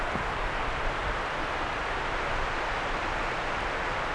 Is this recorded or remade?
recorded